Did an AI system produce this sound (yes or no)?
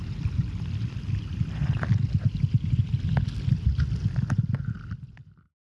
no